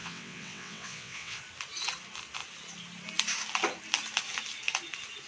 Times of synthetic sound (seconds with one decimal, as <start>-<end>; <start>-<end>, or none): 0.0-1.4